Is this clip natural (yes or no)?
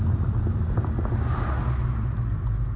yes